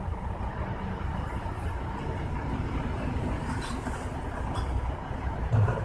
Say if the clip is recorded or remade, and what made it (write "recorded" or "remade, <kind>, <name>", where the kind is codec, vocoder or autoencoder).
recorded